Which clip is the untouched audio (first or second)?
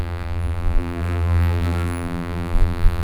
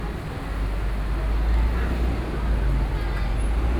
second